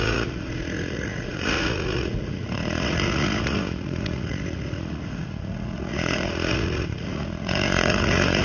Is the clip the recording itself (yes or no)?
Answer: no